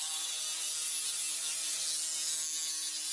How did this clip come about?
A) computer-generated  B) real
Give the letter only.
B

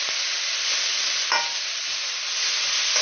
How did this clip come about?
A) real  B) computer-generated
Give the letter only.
A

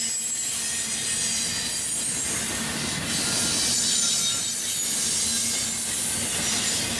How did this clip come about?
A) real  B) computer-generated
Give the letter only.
A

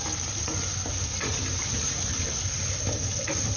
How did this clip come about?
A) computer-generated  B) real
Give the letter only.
B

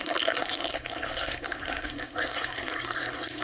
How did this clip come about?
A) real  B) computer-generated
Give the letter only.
B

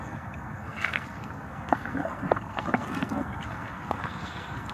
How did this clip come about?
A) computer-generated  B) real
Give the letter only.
A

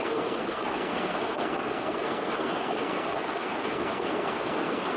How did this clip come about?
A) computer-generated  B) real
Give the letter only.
A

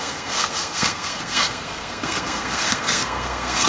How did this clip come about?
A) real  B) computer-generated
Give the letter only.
B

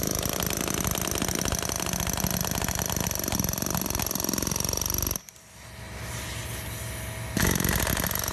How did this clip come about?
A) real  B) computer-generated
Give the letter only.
A